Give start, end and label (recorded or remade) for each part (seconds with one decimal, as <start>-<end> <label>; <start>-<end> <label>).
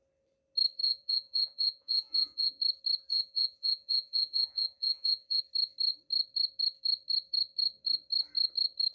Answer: 0.0-0.8 recorded; 0.8-2.6 remade; 2.6-3.1 recorded; 3.1-5.4 remade; 5.4-8.9 recorded